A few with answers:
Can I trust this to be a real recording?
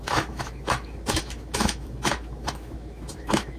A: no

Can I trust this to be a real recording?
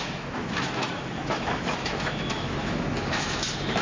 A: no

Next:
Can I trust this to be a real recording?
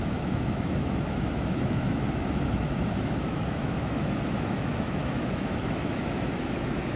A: no